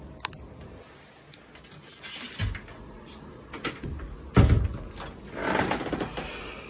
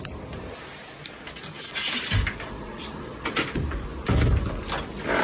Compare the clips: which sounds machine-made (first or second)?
second